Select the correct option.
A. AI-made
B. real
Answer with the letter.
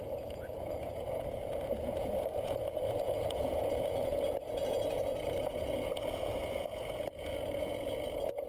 A